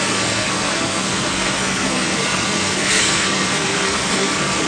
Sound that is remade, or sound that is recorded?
remade